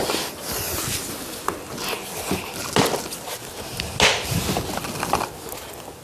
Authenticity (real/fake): real